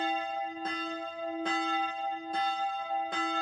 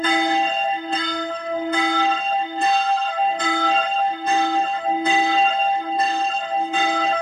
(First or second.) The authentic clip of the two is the first